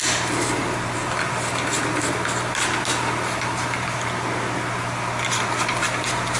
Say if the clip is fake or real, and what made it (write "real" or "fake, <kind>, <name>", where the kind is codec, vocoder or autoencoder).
real